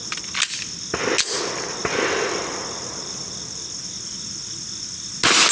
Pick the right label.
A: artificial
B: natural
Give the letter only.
B